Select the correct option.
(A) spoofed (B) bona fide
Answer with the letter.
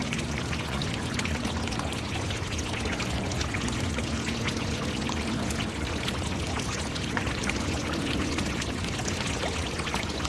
A